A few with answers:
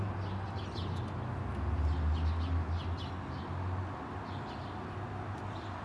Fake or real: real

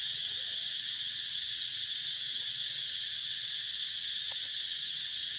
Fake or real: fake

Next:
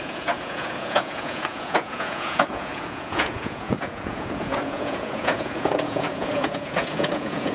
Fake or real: fake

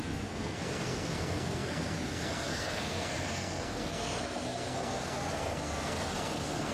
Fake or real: fake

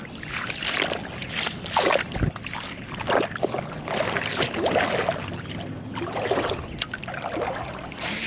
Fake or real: real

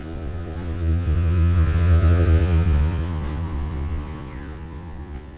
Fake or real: fake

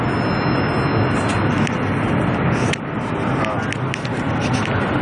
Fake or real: real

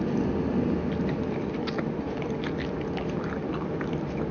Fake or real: real